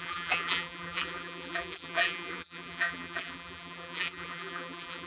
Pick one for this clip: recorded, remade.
remade